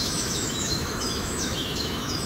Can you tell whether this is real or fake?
fake